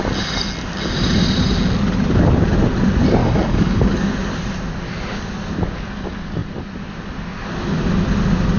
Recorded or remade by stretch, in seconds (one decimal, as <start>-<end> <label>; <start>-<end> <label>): 0.0-3.2 recorded; 3.2-4.1 remade; 4.1-8.6 recorded